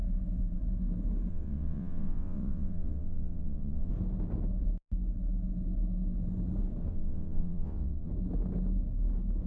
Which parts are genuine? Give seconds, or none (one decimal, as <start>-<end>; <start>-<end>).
0.0-1.3; 3.9-6.9; 8.1-9.5